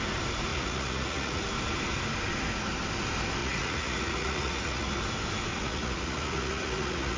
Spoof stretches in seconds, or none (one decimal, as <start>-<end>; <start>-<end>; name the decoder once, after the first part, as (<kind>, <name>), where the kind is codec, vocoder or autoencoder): 0.5-1.4 (vocoder, Vocos); 3.4-5.0; 5.5-7.2